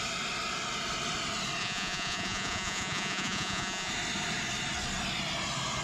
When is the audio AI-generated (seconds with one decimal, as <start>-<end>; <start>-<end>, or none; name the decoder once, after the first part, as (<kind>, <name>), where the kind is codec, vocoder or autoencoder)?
1.6-3.9 (vocoder, Vocos)